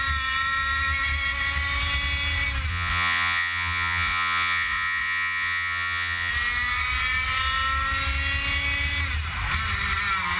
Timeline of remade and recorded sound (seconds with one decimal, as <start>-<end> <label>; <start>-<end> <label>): 0.0-2.7 recorded; 2.7-6.3 remade; 6.3-10.4 recorded